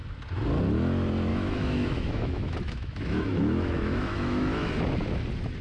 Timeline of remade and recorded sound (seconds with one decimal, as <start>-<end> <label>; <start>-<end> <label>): 0.0-1.3 recorded; 1.3-4.7 remade; 4.7-5.6 recorded